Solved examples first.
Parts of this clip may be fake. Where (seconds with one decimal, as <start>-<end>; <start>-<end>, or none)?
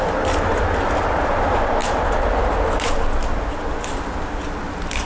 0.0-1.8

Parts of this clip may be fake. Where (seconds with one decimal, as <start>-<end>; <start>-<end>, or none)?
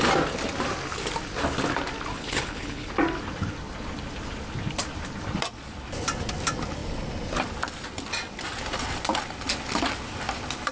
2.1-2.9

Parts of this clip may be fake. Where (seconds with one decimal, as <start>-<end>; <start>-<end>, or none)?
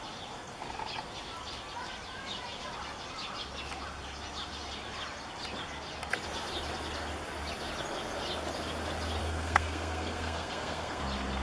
9.2-11.0